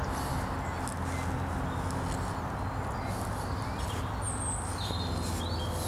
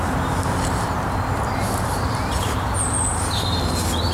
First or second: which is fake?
second